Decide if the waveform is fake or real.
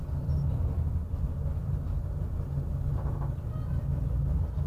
real